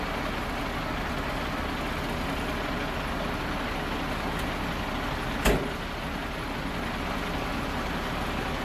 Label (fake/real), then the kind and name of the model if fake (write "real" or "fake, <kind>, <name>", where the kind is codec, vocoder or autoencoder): real